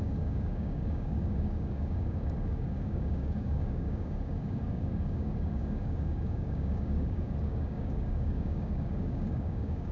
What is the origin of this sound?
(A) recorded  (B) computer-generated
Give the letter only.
B